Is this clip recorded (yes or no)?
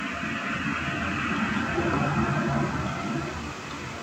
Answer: yes